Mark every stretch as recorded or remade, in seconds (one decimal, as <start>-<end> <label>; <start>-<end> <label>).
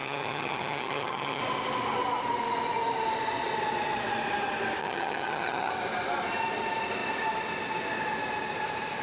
0.0-1.4 remade; 1.4-4.8 recorded; 4.8-5.7 remade; 5.7-9.0 recorded